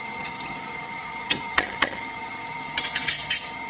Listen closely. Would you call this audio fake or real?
fake